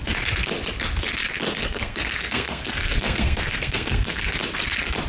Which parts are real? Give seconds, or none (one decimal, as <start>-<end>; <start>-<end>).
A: 0.0-1.6; 4.3-5.1